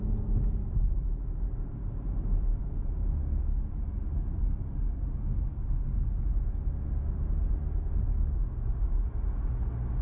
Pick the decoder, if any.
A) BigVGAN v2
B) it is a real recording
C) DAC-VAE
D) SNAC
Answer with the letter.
B